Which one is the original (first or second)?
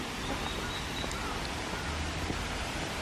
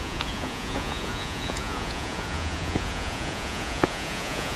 first